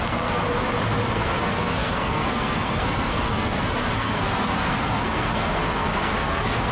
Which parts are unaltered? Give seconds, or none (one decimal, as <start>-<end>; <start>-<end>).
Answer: 0.4-1.1